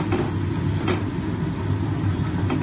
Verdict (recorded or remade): recorded